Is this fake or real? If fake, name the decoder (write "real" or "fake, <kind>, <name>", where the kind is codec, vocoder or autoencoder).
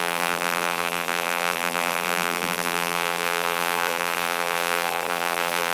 fake, vocoder, BigVGAN v2